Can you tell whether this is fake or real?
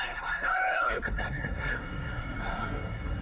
fake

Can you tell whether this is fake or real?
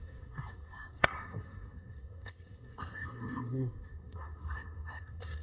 fake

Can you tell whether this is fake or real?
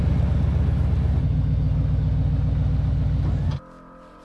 real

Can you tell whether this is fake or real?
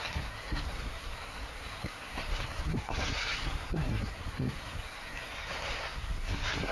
fake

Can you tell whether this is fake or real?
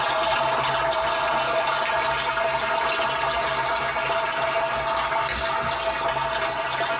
real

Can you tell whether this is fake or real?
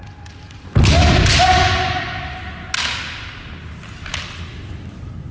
real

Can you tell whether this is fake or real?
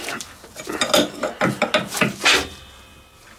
real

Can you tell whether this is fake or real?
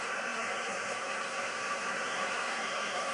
fake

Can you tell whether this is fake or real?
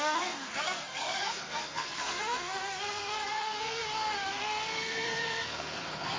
fake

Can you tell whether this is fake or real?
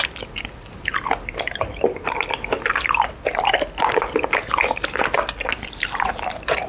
real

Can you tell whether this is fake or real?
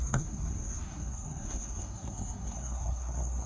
fake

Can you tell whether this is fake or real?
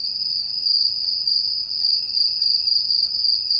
real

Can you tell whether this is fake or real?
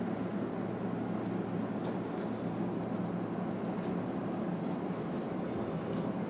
real